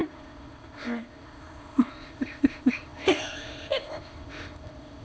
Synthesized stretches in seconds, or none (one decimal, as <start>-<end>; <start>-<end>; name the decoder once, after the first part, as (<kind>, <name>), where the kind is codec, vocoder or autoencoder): 0.0-5.0 (codec, ZipCodec)